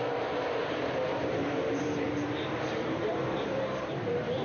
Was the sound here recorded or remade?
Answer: remade